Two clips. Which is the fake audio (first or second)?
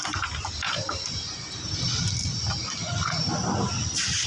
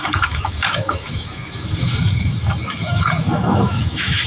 second